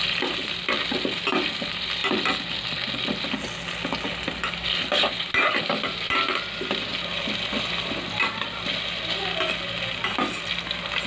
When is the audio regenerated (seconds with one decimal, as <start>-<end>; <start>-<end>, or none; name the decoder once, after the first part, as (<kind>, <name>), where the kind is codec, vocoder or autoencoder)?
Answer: none